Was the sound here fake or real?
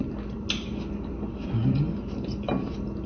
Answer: real